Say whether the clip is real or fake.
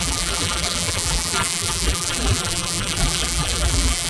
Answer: fake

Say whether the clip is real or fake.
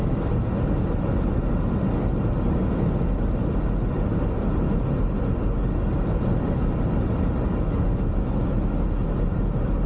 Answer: real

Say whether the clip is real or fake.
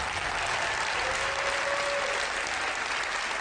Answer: real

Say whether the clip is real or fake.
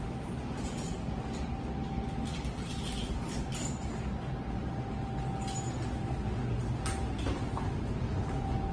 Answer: real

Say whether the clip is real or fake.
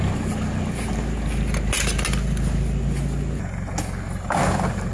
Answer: real